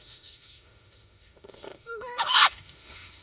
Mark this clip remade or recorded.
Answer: remade